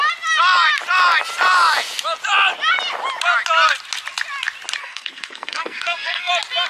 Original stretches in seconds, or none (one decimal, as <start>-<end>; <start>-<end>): 0.0-4.8; 6.3-6.7